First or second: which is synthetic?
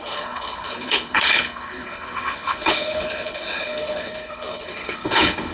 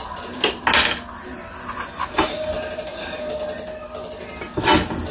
first